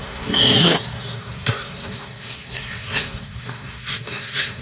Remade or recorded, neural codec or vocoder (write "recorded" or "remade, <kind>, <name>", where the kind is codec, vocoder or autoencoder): remade, codec, SNAC